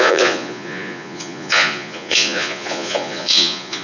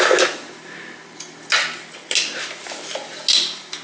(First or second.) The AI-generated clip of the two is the first